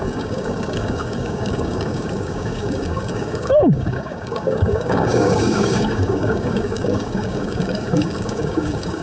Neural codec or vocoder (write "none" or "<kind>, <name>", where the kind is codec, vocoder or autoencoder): codec, DAC